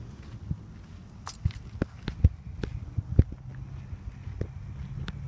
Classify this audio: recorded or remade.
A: recorded